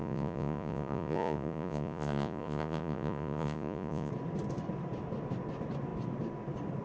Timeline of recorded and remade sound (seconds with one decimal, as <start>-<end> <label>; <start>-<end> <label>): 0.0-4.1 remade; 4.1-6.8 recorded